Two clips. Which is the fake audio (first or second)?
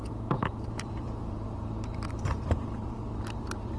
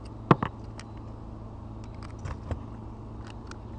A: first